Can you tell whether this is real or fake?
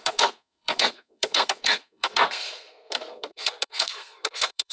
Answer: fake